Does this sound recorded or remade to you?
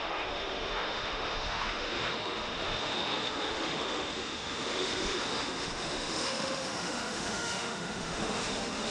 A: remade